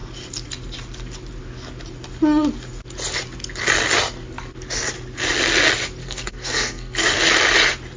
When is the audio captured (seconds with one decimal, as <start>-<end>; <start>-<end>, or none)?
0.0-6.0; 7.1-8.0